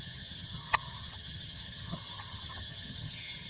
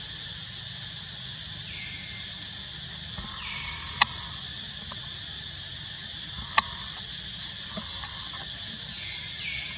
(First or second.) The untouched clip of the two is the second